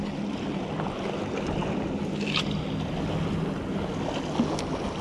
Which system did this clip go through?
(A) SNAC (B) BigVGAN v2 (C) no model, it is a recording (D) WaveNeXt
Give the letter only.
C